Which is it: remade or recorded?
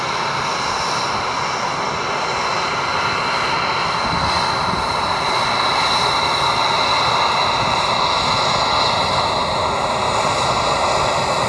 recorded